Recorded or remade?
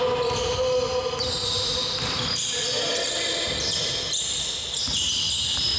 recorded